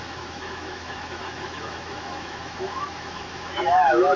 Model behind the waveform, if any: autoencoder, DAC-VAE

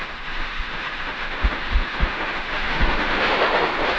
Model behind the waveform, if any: autoencoder, DAC-VAE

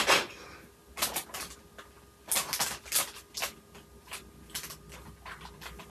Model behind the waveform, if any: none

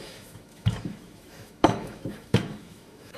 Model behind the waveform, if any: autoencoder, DAC-VAE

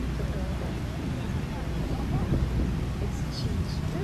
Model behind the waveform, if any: none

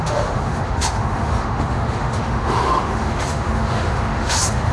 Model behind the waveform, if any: autoencoder, DAC-VAE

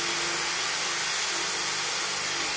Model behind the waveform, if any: none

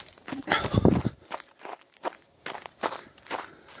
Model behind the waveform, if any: none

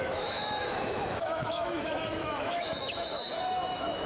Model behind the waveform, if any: autoencoder, DAC-VAE